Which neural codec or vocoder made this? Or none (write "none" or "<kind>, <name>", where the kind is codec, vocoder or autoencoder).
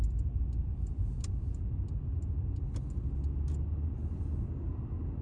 none